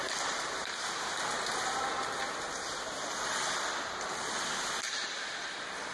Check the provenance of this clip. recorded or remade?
recorded